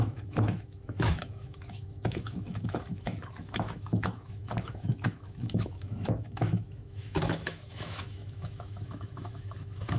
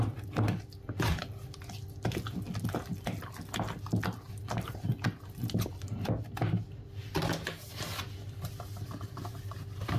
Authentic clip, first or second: second